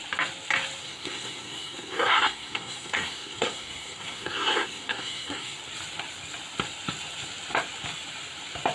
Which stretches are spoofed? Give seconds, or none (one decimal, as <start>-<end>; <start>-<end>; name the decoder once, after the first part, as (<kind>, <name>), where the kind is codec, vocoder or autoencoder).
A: 0.8-5.6 (codec, SNAC)